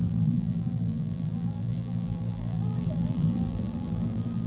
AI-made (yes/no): yes